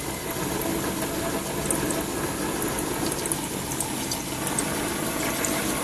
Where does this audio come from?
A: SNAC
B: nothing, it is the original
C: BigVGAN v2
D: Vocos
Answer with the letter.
B